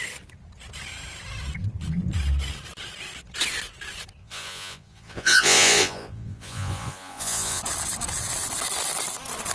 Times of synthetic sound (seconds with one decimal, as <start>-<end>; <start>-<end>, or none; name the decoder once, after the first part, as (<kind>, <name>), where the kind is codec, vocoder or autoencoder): 4.2-7.6 (vocoder, Vocos)